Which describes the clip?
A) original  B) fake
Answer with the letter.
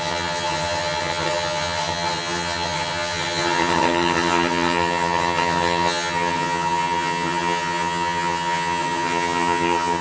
B